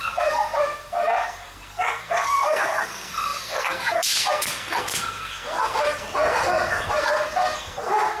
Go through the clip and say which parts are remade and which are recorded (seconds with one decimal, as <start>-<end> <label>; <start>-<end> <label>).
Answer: 0.0-8.2 remade